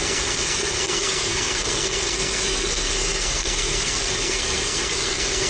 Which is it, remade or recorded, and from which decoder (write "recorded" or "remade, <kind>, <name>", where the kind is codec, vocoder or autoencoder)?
remade, codec, SNAC